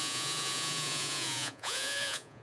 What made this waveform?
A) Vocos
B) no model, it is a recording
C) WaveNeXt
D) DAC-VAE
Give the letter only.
A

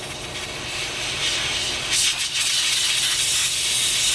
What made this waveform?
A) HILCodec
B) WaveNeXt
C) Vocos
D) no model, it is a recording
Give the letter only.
D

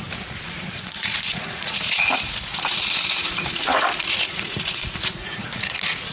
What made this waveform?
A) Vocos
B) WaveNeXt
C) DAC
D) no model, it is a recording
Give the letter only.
A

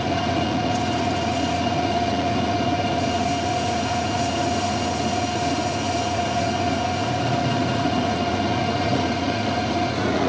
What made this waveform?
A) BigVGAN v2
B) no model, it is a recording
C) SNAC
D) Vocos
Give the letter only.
D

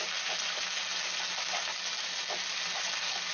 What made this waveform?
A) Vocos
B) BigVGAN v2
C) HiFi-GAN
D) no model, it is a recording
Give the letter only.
D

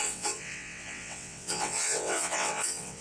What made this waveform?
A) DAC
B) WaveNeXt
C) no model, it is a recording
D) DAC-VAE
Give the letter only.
B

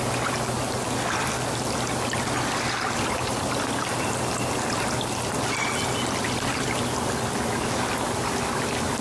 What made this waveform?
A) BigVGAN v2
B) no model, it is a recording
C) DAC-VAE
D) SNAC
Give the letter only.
B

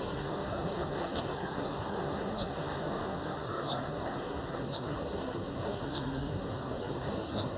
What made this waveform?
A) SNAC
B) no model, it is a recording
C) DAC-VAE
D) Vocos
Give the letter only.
A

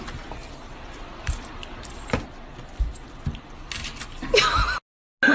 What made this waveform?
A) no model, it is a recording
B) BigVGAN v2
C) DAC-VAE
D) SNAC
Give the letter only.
A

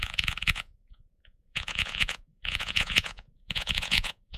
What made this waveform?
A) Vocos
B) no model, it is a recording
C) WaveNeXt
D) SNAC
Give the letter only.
A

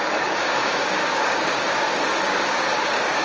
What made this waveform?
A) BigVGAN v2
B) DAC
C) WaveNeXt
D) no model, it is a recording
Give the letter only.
B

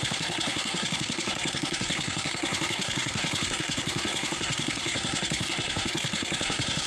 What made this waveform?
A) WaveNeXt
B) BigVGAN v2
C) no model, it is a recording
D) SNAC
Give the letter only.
D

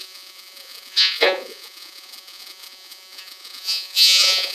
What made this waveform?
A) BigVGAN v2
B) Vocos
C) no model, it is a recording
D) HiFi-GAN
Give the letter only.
B